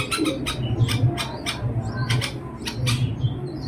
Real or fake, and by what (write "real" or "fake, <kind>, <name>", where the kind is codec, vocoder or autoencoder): real